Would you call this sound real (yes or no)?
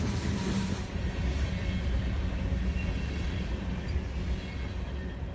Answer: yes